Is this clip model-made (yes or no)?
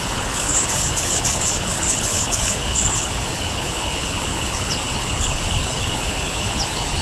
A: yes